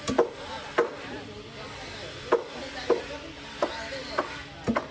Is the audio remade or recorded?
recorded